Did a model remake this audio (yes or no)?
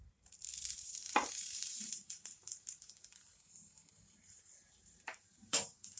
yes